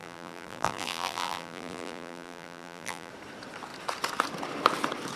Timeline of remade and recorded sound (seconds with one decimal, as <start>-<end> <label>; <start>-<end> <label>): 0.0-3.1 remade; 3.1-5.2 recorded